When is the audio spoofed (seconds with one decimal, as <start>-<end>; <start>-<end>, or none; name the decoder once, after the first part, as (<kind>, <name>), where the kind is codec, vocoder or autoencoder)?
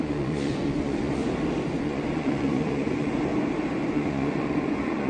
0.0-1.2 (vocoder, Vocos); 1.8-3.3; 3.9-5.1